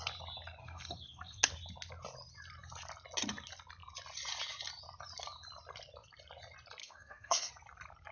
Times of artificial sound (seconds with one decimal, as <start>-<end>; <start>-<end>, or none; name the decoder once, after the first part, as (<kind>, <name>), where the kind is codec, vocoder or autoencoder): 0.6-1.4 (codec, SNAC); 6.8-7.5